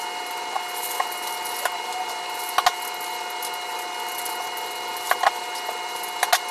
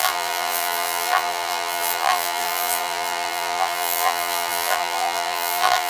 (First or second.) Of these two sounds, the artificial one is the second